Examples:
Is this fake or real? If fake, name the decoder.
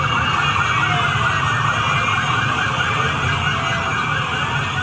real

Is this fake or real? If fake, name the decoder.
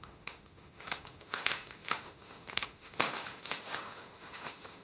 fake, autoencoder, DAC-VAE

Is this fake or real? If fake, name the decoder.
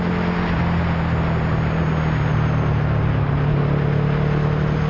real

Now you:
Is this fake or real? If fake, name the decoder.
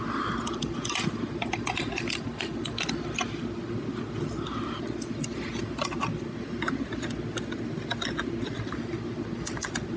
real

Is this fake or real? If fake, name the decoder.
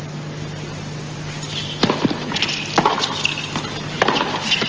real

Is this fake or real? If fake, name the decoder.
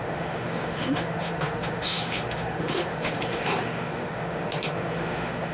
fake, autoencoder, DAC-VAE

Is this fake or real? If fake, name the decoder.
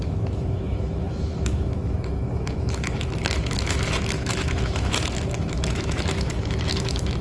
fake, autoencoder, DAC-VAE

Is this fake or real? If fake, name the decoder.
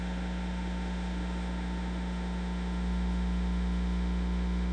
fake, autoencoder, DAC-VAE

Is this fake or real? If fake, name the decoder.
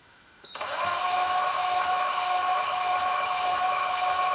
fake, autoencoder, DAC-VAE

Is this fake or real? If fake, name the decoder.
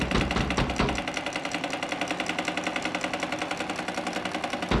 real